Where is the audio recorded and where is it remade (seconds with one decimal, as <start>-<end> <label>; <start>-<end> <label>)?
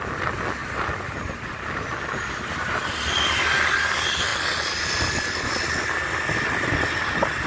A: 0.0-7.5 recorded